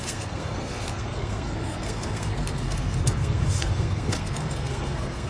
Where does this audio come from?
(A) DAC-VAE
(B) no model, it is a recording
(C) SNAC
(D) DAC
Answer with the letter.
C